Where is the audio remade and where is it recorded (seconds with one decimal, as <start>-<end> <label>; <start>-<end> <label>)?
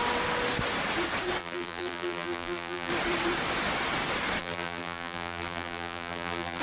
0.0-1.4 recorded; 1.4-2.9 remade; 2.9-4.4 recorded; 4.4-6.6 remade